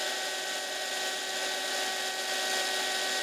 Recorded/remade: recorded